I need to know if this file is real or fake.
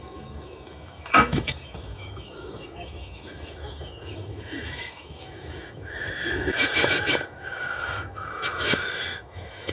fake